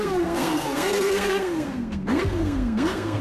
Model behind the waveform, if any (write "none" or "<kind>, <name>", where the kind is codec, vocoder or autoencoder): codec, SNAC